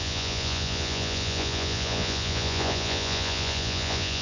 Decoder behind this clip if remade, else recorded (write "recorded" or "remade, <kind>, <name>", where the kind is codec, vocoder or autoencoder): remade, vocoder, Vocos